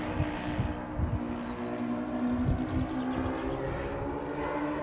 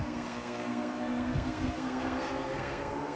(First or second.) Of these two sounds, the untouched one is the first